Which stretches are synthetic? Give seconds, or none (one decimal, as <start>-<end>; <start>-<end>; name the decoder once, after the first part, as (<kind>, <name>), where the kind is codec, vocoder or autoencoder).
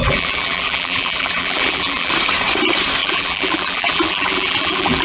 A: 0.0-2.1 (vocoder, BigVGAN v2); 3.0-5.0